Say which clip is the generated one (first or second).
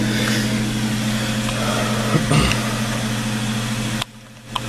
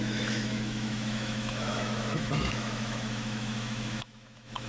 second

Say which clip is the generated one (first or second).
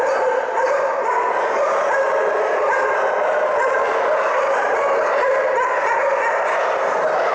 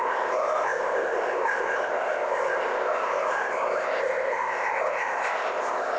second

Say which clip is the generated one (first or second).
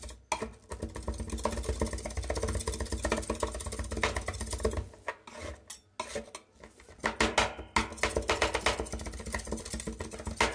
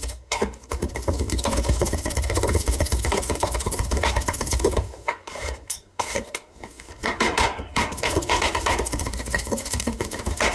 second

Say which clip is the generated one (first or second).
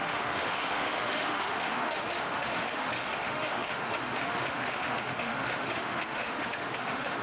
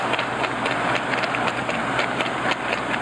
first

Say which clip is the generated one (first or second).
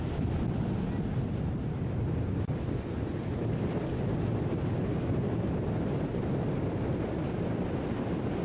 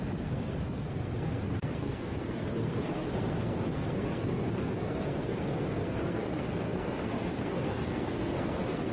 second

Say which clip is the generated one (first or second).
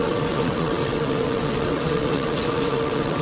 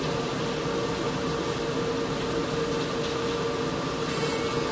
first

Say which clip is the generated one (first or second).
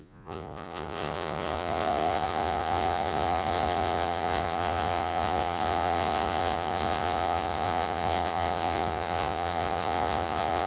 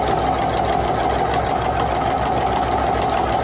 first